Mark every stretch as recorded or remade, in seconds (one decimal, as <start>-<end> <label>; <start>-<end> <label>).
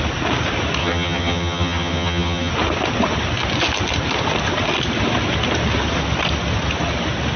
0.0-0.8 recorded; 0.8-2.5 remade; 2.5-7.4 recorded